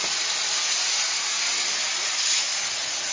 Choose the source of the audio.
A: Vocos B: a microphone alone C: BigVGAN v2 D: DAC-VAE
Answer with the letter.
B